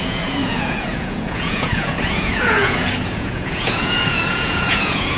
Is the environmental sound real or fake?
fake